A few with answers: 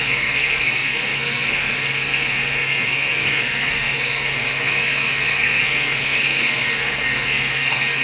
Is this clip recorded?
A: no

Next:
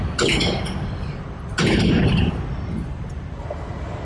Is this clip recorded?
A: yes